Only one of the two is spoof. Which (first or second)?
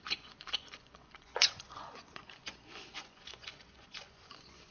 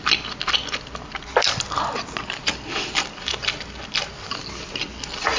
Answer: first